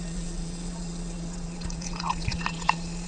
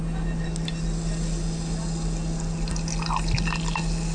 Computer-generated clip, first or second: first